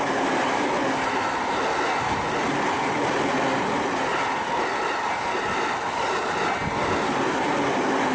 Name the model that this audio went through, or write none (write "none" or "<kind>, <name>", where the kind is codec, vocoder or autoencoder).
none